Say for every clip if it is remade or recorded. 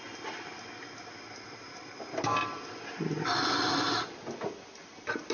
recorded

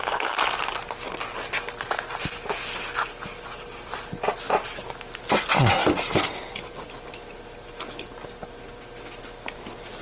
recorded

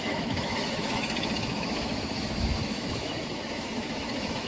remade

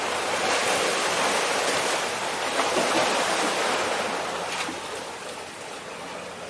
recorded